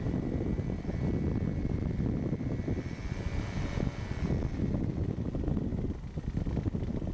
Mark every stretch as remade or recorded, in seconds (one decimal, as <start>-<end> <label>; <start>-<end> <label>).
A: 0.0-3.0 remade; 3.0-4.9 recorded; 4.9-5.7 remade; 5.7-7.1 recorded